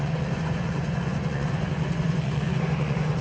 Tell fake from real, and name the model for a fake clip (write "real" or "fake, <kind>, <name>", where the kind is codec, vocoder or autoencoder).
fake, vocoder, Vocos